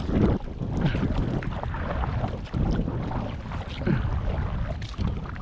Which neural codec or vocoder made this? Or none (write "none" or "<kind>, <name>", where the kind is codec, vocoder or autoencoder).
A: none